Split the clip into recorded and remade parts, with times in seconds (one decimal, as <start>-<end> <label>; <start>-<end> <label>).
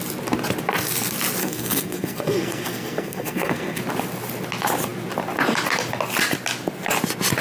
0.0-1.4 recorded; 1.4-3.8 remade; 3.8-7.4 recorded